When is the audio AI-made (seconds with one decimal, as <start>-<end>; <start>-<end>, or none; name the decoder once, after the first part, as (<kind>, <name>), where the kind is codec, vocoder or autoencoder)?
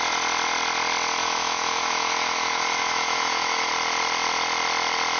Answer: 1.2-3.7 (autoencoder, DAC-VAE)